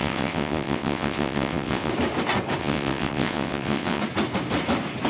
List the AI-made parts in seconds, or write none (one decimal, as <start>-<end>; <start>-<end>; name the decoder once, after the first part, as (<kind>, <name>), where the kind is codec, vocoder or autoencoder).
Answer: 0.0-1.9 (vocoder, WaveNeXt); 2.6-4.0